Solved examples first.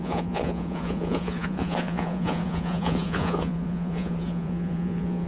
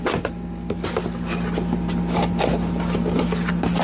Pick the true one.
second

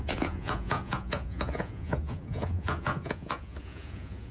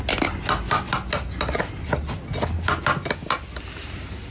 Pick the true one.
second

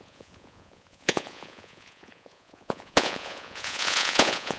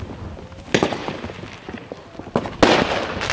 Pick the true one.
second